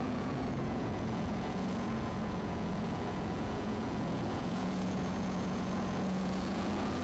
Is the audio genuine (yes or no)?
no